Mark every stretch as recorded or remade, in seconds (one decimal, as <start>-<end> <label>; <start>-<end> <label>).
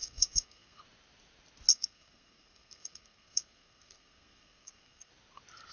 0.0-0.8 remade; 0.8-1.7 recorded; 1.7-5.1 remade; 5.1-5.7 recorded